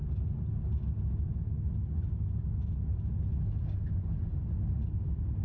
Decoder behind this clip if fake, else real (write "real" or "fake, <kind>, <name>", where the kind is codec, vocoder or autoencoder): real